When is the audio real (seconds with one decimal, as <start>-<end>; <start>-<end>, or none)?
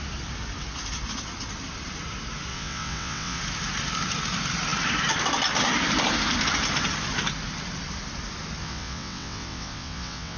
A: 0.0-2.5; 3.4-8.6